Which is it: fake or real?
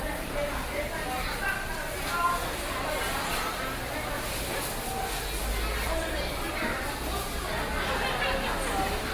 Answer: real